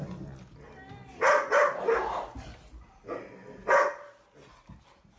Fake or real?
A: real